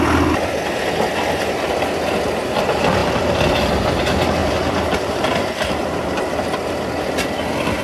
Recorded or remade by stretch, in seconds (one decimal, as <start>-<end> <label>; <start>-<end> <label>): 0.0-4.4 recorded; 4.4-6.2 remade; 6.2-7.8 recorded